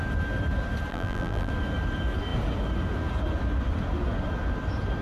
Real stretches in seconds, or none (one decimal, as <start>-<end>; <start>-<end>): 0.0-0.9; 1.5-5.0